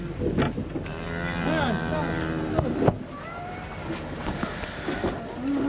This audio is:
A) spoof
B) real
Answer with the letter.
B